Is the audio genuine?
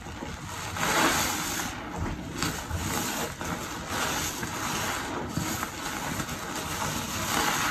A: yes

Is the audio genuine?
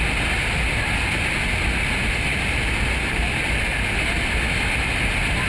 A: yes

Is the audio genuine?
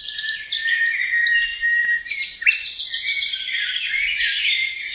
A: no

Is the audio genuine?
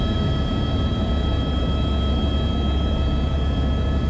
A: yes